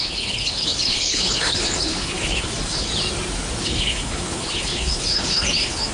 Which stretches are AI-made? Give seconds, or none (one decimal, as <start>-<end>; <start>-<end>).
0.0-2.9; 3.6-5.9